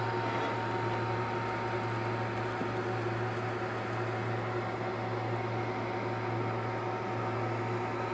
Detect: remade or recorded recorded